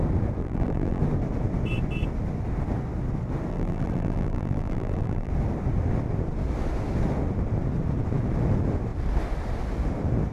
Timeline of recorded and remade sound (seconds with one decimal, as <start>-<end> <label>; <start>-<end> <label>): 0.0-0.4 recorded; 0.4-1.0 remade; 1.0-3.5 recorded; 3.5-5.3 remade; 5.3-10.3 recorded